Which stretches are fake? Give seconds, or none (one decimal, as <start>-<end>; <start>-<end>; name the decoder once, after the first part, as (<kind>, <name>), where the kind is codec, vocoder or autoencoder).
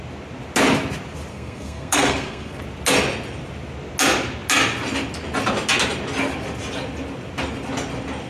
1.3-2.6 (codec, SNAC)